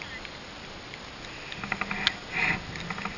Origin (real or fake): real